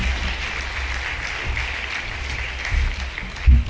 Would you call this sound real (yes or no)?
yes